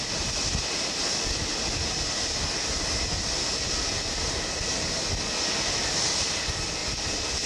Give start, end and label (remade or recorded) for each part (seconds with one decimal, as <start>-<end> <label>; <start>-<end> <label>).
0.0-7.5 recorded